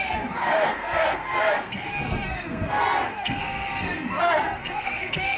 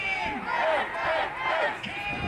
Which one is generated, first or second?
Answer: first